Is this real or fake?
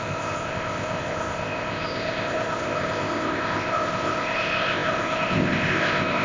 fake